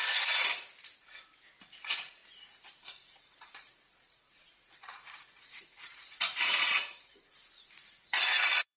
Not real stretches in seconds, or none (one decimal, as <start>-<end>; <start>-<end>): 1.0-8.8